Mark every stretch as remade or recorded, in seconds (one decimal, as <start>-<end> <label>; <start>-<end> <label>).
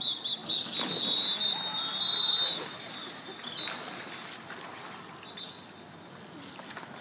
0.0-7.0 recorded